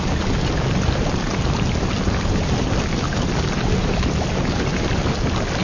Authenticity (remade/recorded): recorded